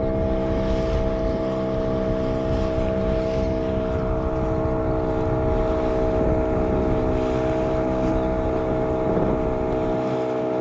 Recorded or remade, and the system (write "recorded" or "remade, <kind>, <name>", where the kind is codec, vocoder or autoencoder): recorded